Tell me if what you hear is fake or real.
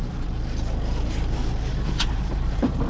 fake